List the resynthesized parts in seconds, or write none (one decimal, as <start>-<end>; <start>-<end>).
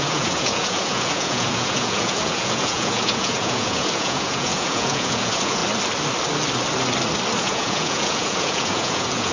0.0-5.6; 7.4-9.3